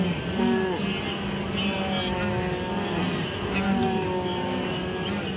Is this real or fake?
real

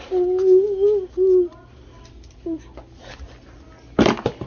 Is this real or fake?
real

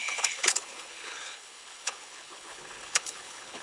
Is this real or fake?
fake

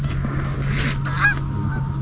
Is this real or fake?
real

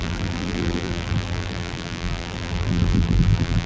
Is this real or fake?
fake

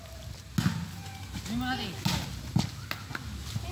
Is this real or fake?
real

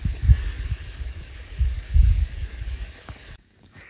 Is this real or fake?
fake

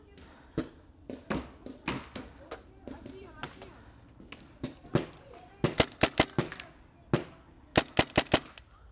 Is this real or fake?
real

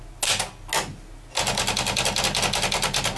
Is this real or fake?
real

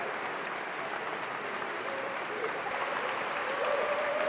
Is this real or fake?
fake